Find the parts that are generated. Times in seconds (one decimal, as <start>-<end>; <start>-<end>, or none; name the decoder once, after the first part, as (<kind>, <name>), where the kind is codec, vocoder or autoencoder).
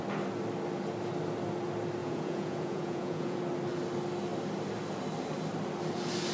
2.0-3.4 (vocoder, Vocos)